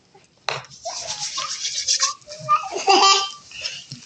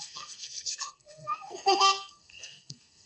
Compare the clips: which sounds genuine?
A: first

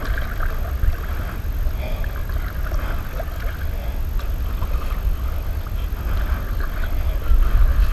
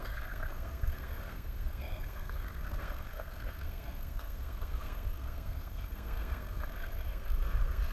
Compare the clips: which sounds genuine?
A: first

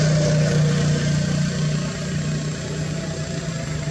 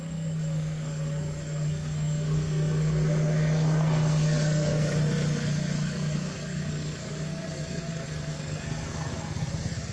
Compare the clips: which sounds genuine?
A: first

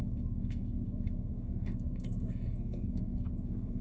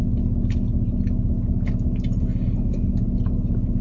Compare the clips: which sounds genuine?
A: second